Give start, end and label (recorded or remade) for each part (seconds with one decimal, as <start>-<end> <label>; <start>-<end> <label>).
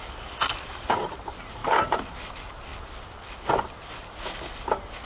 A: 0.0-5.1 recorded